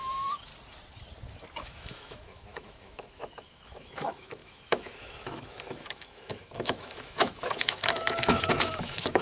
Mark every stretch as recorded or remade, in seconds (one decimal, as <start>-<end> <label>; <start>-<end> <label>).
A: 0.0-0.5 remade; 0.5-1.6 recorded; 1.6-9.2 remade